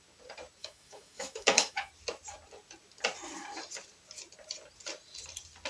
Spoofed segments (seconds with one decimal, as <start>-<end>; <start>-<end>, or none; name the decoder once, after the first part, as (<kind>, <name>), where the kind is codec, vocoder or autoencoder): 0.6-1.9 (autoencoder, DAC-VAE)